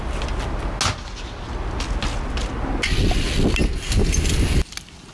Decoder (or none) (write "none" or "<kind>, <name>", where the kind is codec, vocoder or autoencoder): none